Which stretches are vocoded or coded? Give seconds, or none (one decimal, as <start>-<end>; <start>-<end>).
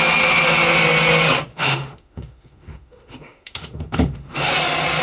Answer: 1.5-4.5